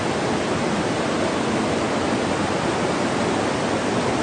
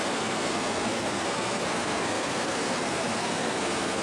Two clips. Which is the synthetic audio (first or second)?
second